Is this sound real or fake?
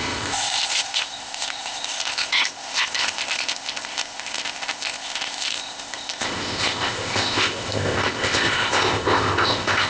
fake